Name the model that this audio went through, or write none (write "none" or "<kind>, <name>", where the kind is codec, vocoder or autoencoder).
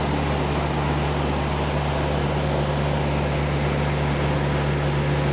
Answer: none